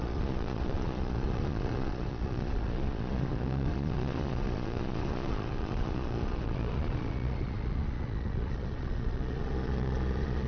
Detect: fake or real fake